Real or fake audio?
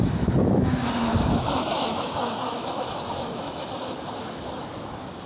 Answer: fake